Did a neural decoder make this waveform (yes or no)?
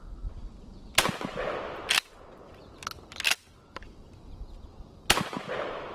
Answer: no